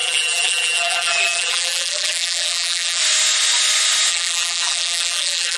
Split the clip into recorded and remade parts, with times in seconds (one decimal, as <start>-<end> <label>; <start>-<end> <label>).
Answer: 0.0-3.0 remade; 3.0-4.1 recorded; 4.1-5.6 remade